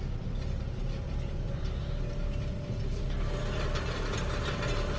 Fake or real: real